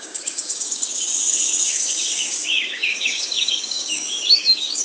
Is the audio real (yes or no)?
no